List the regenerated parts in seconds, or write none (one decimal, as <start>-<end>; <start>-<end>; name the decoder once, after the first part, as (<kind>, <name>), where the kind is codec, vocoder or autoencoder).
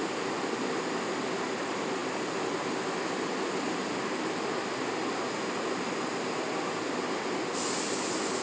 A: none